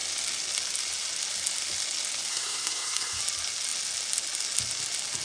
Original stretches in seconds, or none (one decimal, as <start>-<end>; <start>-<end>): 0.0-2.3; 3.2-5.2